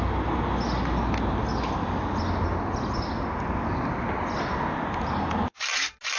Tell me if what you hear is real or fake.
real